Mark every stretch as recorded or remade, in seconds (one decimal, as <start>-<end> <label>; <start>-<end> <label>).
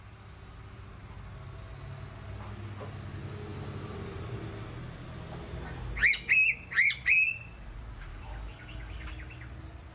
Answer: 0.0-8.1 recorded; 8.1-9.1 remade; 9.1-9.9 recorded